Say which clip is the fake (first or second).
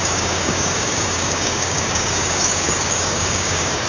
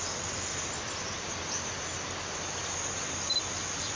first